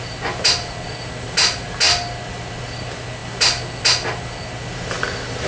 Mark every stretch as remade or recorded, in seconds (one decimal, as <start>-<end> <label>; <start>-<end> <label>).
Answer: 0.0-5.5 recorded